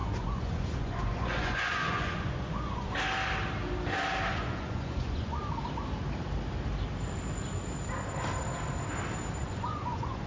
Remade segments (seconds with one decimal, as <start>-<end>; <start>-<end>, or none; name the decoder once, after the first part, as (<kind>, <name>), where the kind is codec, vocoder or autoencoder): 0.0-2.9 (vocoder, Vocos); 4.3-5.4; 9.4-10.3